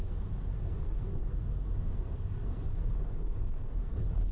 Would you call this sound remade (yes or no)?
yes